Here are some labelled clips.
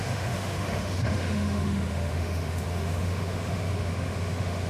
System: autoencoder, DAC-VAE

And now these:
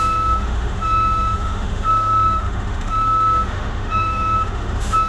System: autoencoder, DAC-VAE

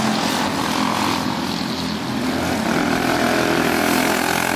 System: none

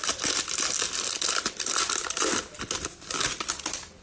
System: none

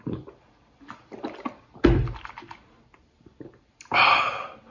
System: none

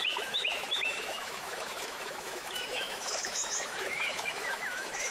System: autoencoder, DAC-VAE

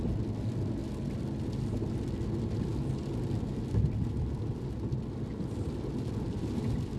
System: none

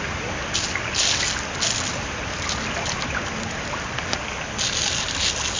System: none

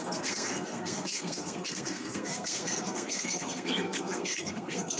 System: codec, SNAC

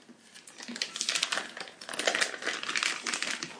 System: none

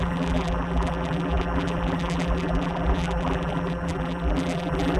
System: vocoder, BigVGAN v2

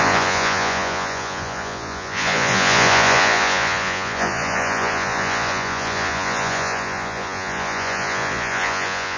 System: vocoder, Vocos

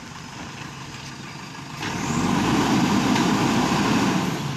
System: vocoder, BigVGAN v2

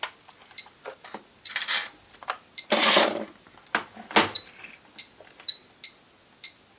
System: none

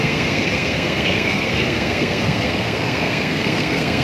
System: codec, SNAC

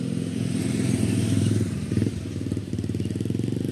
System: vocoder, BigVGAN v2